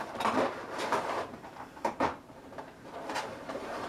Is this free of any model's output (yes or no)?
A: no